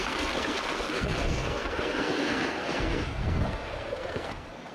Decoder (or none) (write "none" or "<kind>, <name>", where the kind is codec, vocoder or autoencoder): codec, SNAC